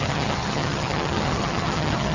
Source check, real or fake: fake